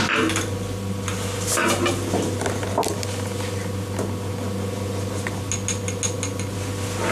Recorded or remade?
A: recorded